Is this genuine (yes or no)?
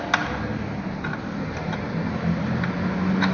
yes